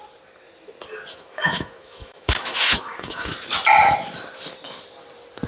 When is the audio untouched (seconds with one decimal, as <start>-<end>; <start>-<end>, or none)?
0.0-1.1; 3.3-5.5